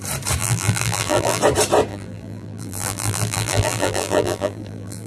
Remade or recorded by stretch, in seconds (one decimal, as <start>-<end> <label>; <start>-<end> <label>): 0.0-0.4 recorded; 0.4-1.4 remade; 1.4-1.9 recorded; 1.9-5.1 remade